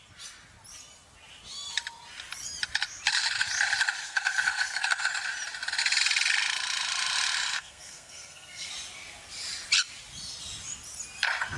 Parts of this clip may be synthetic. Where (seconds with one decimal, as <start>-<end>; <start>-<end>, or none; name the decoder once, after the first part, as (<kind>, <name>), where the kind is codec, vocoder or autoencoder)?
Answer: 4.0-5.0 (codec, SNAC); 7.5-8.7